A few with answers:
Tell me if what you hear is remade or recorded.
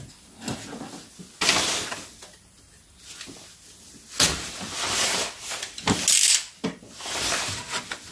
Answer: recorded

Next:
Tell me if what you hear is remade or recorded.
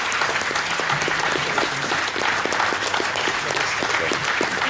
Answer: recorded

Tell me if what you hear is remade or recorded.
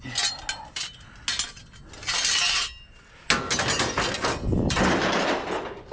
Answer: recorded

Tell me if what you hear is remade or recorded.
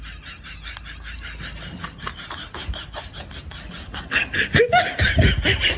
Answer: recorded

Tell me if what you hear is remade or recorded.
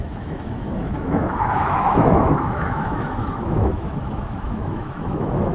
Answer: remade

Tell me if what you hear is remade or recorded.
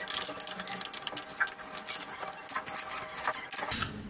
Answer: recorded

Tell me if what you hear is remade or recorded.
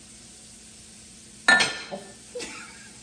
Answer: recorded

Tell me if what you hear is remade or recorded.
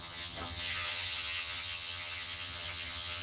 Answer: remade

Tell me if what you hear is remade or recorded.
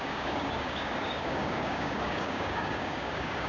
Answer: remade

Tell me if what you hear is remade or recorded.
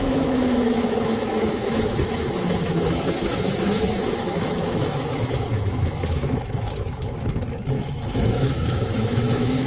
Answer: remade